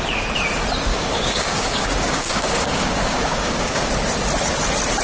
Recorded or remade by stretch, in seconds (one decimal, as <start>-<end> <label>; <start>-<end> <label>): 0.0-0.9 recorded; 0.9-3.9 remade; 3.9-5.0 recorded